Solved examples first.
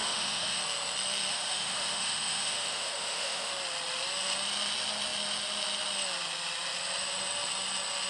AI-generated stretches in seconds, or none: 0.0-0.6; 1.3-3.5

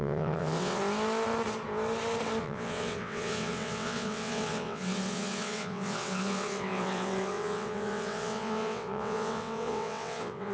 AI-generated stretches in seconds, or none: 0.0-0.8; 2.4-10.5

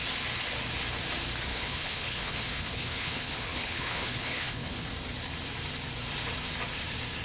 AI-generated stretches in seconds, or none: 1.5-4.9

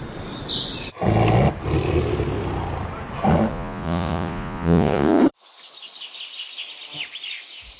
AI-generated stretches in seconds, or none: 3.5-5.2

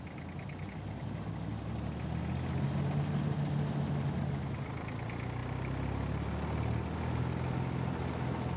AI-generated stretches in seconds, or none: none